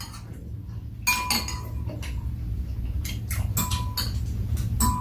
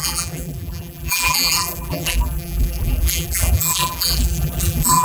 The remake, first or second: second